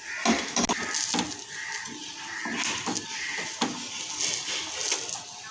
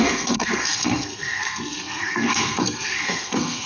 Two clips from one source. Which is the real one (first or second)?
first